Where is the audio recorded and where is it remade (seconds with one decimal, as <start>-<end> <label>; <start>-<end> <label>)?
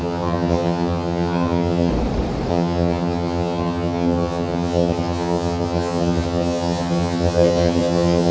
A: 0.0-1.9 remade; 1.9-2.5 recorded; 2.5-8.3 remade